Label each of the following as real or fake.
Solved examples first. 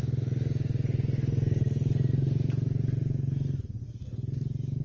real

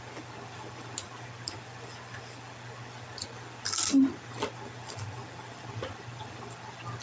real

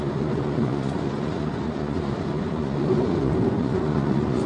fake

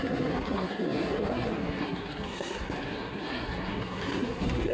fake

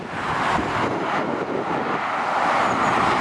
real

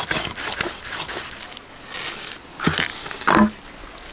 real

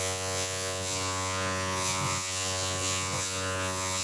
fake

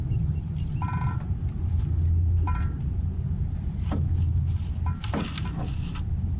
real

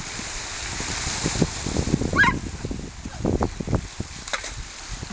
real